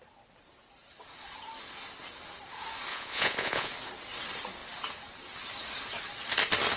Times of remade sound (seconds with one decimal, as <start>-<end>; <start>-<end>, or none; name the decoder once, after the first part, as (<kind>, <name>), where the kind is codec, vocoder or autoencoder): 2.9-3.7 (vocoder, Vocos)